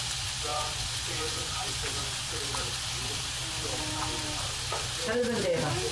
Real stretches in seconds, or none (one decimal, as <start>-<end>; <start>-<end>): 0.0-0.5; 2.3-5.9